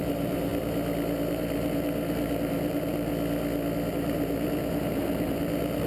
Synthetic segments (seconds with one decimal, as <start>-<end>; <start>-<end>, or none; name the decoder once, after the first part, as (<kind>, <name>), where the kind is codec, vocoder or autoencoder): 0.0-0.5 (vocoder, BigVGAN v2); 1.3-3.1; 3.9-5.9